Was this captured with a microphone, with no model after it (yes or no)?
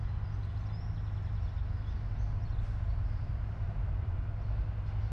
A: yes